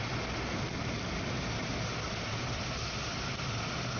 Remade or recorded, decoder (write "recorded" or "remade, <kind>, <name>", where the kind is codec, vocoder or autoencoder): recorded